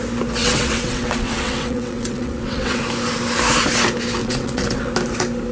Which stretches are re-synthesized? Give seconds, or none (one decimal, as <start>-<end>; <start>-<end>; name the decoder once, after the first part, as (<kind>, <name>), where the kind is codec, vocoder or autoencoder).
0.4-2.8 (vocoder, WaveNeXt); 4.2-4.9